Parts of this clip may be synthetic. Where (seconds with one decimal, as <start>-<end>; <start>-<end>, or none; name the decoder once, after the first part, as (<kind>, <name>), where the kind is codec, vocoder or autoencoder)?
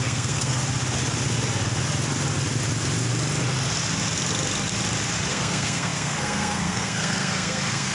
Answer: 0.0-0.6 (codec, SNAC); 5.3-7.9